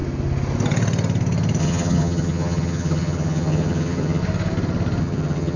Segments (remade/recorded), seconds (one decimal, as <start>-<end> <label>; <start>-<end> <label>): 0.0-1.6 recorded; 1.6-4.2 remade; 4.2-5.0 recorded; 5.0-5.6 remade